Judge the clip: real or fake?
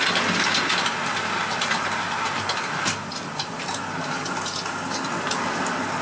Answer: real